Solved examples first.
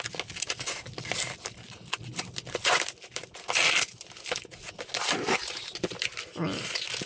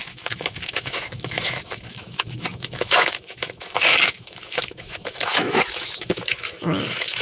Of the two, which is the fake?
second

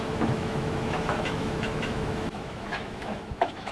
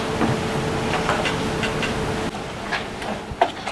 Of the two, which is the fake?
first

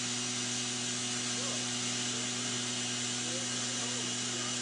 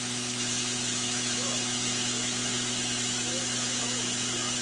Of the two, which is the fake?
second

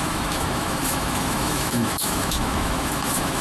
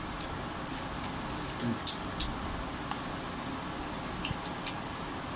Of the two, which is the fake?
first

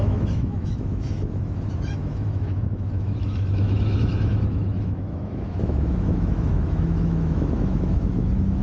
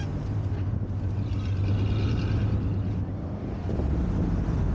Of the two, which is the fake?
first